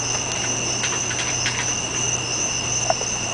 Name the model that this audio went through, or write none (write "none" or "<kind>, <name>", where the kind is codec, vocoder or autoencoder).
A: none